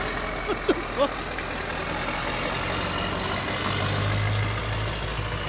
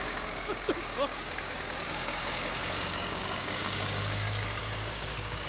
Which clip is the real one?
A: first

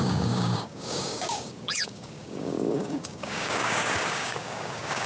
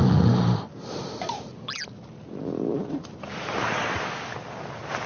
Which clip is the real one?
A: second